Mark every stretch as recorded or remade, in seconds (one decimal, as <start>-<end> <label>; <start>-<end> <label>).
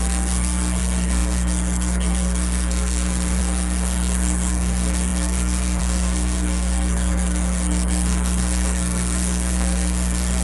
0.0-10.4 remade